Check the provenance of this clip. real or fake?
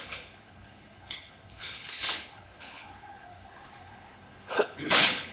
fake